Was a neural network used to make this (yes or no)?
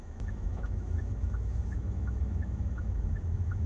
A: yes